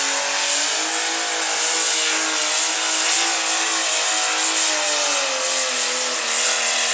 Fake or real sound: real